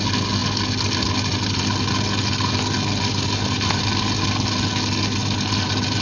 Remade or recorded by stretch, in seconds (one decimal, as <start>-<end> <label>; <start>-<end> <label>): 0.0-6.0 recorded